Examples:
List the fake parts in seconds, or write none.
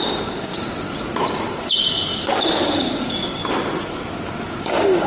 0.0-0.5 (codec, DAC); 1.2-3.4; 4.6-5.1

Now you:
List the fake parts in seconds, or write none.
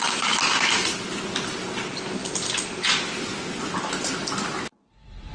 none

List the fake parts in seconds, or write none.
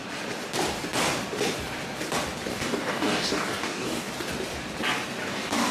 2.5-4.1 (codec, DAC); 5.2-5.7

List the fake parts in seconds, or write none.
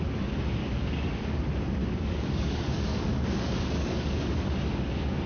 0.6-1.4 (codec, DAC); 1.8-5.3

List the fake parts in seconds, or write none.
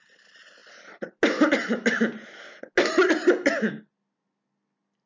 none